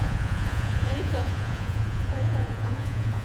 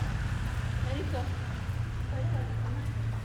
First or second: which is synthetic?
first